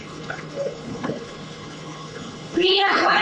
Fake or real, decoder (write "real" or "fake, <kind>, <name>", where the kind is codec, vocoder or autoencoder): fake, codec, HILCodec